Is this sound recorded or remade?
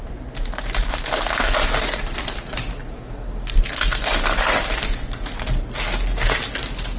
recorded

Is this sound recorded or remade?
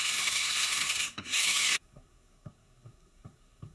remade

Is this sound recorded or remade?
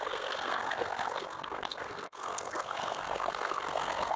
remade